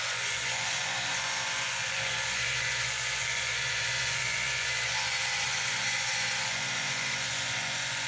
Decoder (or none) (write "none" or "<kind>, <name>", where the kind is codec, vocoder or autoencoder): vocoder, Vocos